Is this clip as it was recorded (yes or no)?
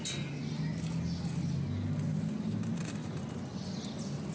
yes